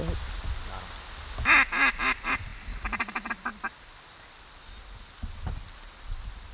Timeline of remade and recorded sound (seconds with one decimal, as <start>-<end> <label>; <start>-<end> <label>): 0.0-6.5 recorded